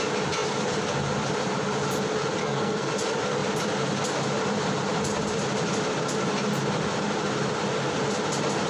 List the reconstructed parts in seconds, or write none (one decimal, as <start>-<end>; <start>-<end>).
2.4-2.9